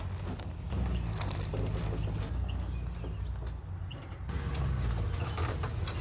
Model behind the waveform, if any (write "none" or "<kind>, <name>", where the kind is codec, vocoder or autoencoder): none